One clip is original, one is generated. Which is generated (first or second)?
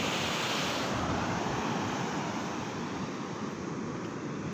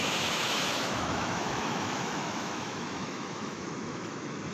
second